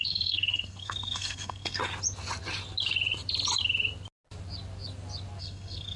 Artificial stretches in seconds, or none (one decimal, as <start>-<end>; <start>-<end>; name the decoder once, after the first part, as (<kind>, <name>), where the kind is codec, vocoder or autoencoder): 0.0-1.8 (codec, SNAC); 5.4-6.0